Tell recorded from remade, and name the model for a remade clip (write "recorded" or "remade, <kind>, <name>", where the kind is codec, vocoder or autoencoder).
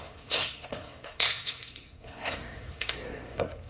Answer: remade, codec, SNAC